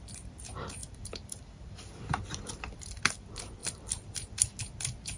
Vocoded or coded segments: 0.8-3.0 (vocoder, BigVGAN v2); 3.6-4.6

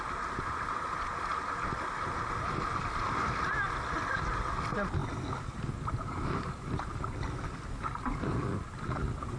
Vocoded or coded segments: none

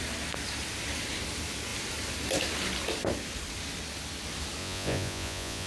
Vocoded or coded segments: 4.6-5.7 (vocoder, Vocos)

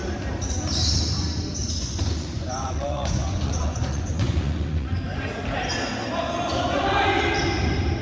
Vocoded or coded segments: 1.6-5.0 (vocoder, Vocos)

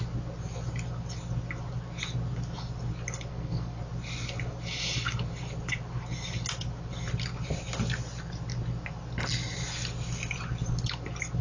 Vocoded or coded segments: 3.3-3.8 (codec, SNAC)

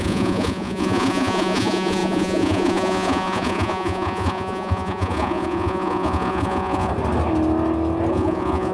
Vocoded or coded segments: 0.0-6.9 (vocoder, Vocos); 8.1-8.7